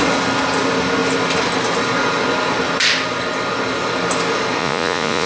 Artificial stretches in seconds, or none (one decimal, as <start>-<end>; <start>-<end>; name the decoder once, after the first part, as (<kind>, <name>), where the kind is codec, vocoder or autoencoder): 4.6-5.3 (vocoder, Vocos)